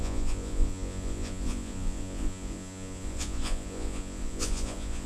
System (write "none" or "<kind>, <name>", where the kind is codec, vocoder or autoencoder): vocoder, Vocos